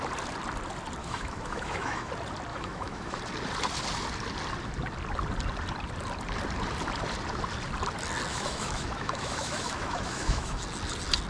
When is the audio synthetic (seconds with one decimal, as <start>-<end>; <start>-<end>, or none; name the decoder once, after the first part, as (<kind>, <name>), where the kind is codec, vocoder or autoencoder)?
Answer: 1.0-2.1 (autoencoder, DAC-VAE); 2.5-3.2; 8.3-10.6

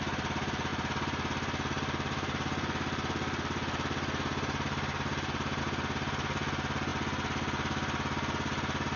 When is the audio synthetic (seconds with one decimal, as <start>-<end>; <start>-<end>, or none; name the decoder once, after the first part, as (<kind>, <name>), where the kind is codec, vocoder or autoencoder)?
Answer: none